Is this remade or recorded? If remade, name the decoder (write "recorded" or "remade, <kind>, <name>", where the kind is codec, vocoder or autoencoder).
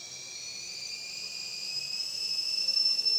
recorded